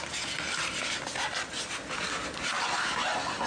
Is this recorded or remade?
recorded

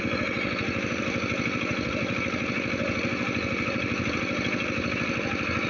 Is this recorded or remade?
recorded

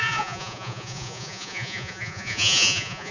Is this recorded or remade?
remade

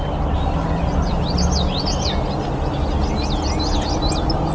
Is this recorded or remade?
recorded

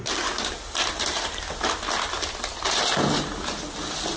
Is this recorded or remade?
recorded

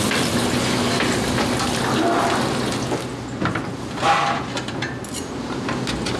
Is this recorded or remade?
recorded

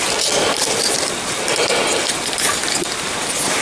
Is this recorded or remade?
recorded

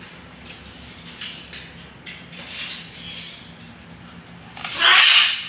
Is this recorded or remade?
recorded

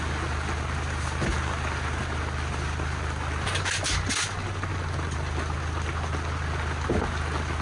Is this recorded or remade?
recorded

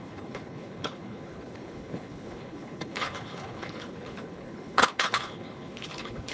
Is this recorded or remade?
remade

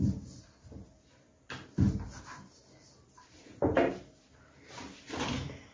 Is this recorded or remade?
recorded